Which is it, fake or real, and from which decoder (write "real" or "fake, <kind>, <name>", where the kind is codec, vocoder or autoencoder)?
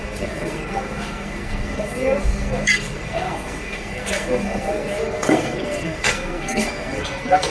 fake, codec, SNAC